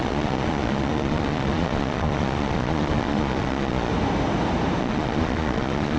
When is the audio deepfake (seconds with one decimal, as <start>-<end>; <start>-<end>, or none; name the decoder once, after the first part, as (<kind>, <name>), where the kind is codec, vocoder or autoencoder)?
0.0-3.9 (vocoder, Vocos); 4.8-6.0